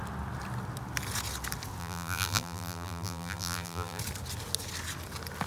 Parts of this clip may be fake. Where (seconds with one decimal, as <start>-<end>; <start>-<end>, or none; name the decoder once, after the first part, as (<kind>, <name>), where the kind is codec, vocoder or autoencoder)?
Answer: 1.8-4.0 (vocoder, BigVGAN v2)